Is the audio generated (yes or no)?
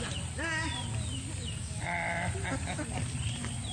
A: no